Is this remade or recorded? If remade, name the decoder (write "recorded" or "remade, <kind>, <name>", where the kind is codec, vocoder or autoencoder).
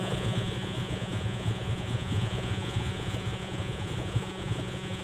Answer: remade, vocoder, Vocos